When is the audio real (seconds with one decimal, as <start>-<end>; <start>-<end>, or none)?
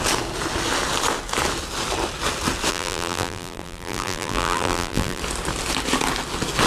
0.0-2.7; 5.2-6.7